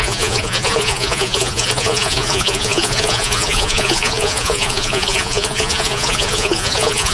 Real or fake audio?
fake